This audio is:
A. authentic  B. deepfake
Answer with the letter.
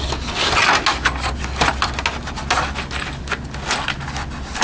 A